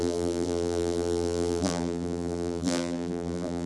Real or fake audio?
fake